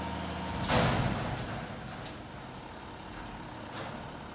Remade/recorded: recorded